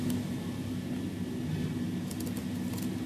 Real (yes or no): yes